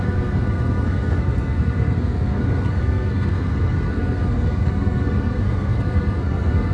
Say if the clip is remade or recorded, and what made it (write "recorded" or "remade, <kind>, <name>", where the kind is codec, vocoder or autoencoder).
remade, codec, SNAC